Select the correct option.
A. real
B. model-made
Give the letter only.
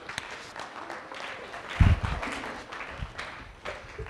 A